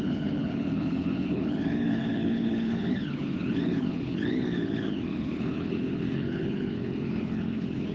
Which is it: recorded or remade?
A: remade